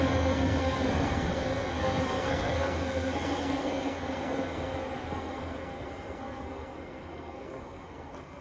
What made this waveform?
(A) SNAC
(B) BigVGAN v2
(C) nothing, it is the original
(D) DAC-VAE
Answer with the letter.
A